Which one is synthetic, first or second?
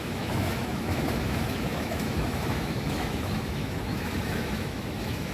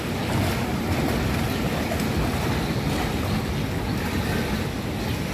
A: first